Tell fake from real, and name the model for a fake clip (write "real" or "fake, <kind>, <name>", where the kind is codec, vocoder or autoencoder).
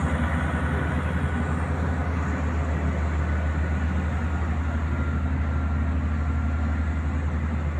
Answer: real